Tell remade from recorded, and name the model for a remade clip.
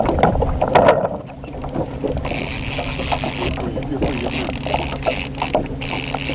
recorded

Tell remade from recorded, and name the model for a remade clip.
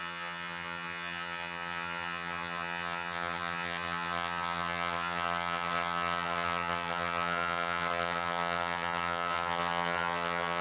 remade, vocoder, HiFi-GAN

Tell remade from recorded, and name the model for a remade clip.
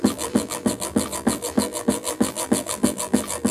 remade, vocoder, BigVGAN v2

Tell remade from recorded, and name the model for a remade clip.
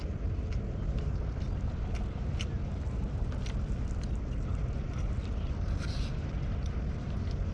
recorded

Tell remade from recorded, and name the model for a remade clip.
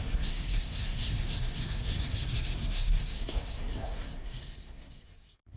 remade, codec, SNAC